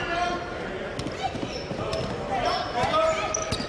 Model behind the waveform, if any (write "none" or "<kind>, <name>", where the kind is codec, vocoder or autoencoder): none